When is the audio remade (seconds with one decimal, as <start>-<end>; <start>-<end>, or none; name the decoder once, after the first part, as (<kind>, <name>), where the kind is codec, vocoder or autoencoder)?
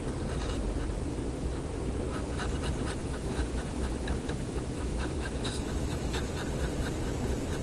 3.0-6.2 (autoencoder, DAC-VAE)